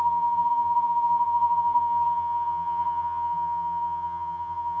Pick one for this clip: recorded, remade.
remade